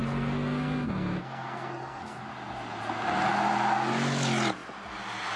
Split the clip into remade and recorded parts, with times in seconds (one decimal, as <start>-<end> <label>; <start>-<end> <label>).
0.0-2.2 remade; 2.2-5.4 recorded